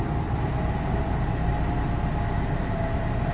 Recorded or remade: recorded